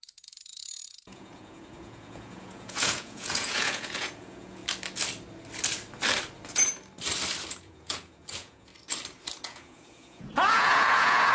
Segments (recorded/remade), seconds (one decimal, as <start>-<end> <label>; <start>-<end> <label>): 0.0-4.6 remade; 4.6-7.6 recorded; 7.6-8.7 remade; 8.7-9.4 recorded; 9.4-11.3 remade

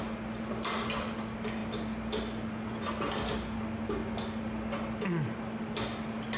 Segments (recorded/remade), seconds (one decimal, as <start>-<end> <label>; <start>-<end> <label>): 0.0-6.4 recorded

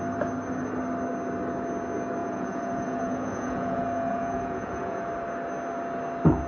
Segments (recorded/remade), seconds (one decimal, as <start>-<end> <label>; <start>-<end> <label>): 0.0-2.2 recorded; 2.2-5.1 remade; 5.1-6.5 recorded